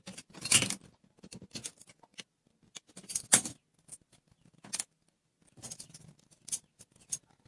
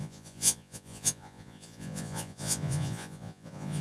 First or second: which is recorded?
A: first